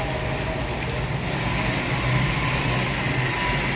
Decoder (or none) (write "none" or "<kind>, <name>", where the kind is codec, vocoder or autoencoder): none